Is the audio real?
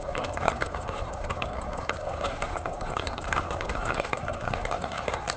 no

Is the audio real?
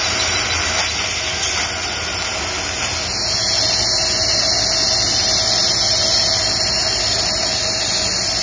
yes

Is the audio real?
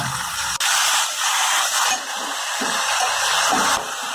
no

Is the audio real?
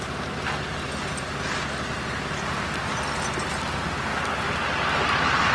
yes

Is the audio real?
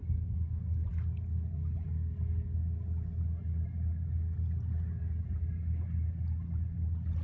yes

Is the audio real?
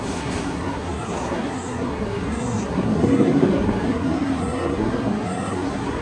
no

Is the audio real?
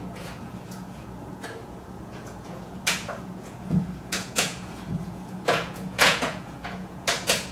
no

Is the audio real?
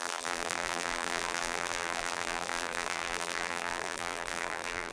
no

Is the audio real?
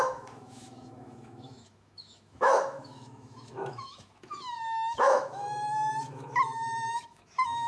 no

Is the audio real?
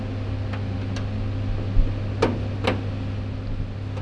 yes